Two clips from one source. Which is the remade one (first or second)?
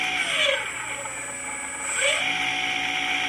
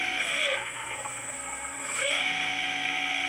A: second